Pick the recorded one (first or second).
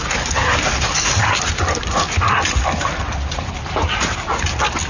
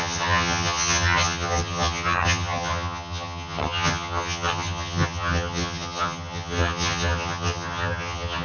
first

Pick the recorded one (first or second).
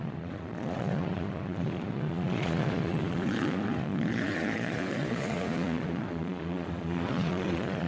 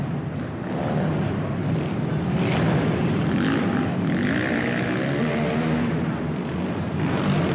second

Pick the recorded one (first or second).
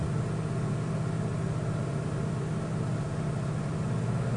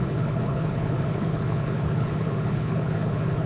first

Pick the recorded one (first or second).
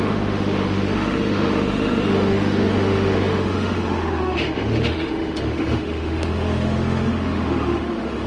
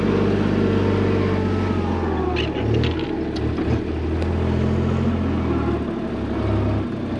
second